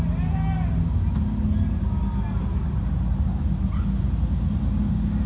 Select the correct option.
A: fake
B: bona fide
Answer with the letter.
B